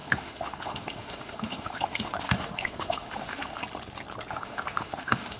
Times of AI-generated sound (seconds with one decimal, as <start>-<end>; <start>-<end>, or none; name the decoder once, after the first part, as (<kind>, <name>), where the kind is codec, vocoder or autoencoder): 0.0-3.6 (autoencoder, DAC-VAE); 4.3-5.4